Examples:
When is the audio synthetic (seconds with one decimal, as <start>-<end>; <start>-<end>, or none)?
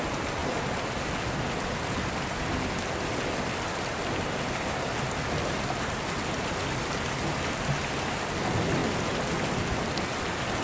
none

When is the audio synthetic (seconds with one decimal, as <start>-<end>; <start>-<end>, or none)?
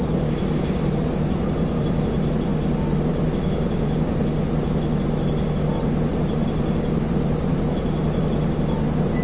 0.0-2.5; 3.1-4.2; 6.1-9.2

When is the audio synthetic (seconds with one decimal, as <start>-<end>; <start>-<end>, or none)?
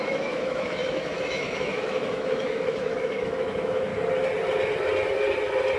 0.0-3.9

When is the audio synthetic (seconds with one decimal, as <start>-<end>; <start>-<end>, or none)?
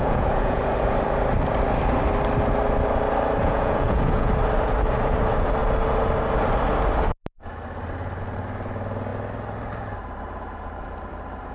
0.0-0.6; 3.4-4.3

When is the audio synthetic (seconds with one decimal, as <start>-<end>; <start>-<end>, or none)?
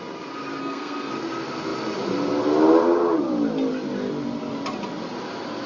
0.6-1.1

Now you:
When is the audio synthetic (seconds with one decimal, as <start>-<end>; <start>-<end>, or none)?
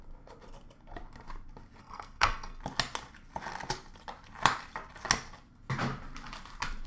1.8-2.6